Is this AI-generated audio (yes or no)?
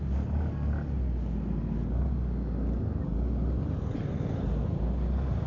no